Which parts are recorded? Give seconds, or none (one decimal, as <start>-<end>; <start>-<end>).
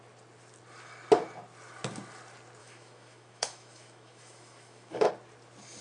0.0-2.6; 5.1-5.8